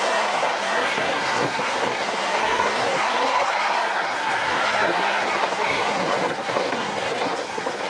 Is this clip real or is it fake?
fake